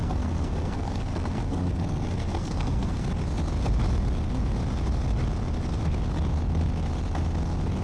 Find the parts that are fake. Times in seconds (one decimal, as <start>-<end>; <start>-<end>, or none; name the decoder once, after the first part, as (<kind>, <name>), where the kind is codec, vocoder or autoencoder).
0.0-3.1 (codec, SNAC)

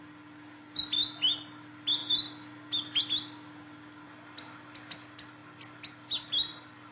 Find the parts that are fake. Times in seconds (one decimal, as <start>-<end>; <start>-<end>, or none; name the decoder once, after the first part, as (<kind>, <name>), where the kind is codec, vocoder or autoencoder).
none

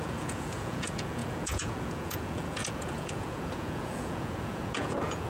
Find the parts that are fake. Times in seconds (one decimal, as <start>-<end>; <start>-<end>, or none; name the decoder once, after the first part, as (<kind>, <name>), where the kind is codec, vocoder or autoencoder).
0.0-5.3 (vocoder, Vocos)

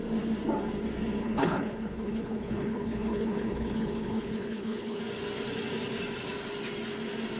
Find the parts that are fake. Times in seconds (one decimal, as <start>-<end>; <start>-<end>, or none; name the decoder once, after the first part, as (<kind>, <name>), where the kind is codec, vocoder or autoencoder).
1.2-5.0 (codec, HILCodec)